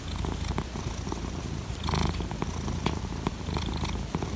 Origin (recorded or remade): recorded